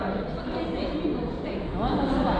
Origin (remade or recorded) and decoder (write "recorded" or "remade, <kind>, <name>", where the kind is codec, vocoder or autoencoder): recorded